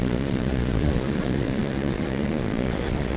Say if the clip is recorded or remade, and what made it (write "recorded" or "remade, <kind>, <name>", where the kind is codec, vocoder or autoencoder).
remade, vocoder, Vocos